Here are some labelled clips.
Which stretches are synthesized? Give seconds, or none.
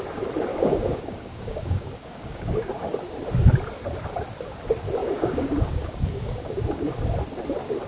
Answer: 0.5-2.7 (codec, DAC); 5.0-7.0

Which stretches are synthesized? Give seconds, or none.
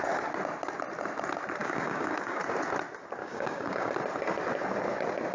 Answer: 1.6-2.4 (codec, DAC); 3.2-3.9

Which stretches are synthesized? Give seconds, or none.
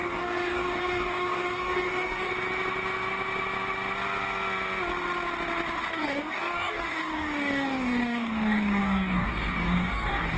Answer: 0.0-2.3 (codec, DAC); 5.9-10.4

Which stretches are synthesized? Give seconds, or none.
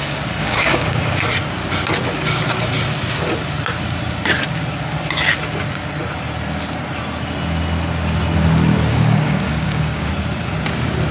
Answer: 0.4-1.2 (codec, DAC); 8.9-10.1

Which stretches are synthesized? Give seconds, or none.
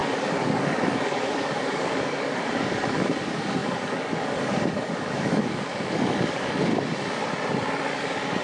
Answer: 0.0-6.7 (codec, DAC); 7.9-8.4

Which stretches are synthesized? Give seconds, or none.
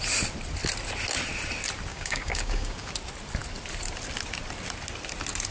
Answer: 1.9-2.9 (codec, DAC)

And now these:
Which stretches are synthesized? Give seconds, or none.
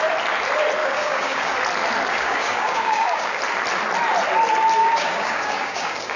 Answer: 0.8-1.5 (codec, DAC); 2.1-3.4; 4.8-6.2